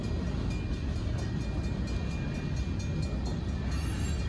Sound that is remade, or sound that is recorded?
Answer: recorded